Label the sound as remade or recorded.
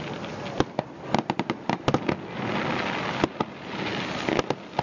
recorded